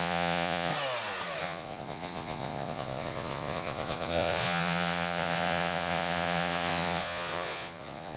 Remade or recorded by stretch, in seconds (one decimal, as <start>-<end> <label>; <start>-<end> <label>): 0.0-0.7 remade; 0.7-1.4 recorded; 1.4-8.2 remade